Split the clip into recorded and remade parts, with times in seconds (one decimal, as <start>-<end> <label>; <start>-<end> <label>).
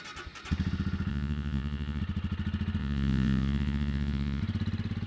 0.0-1.1 recorded; 1.1-2.0 remade; 2.0-2.8 recorded; 2.8-4.4 remade; 4.4-5.1 recorded